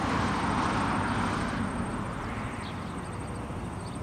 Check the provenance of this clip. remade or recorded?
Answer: remade